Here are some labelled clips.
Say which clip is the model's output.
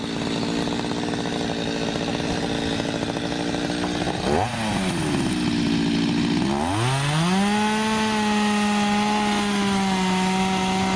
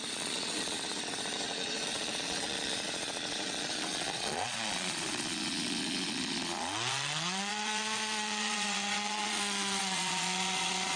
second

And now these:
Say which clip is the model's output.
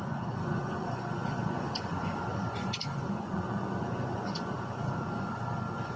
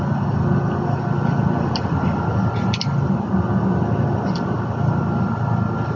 first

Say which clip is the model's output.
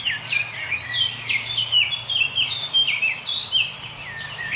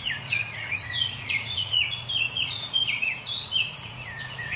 second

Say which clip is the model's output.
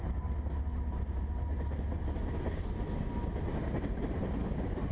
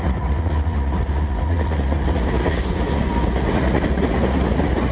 second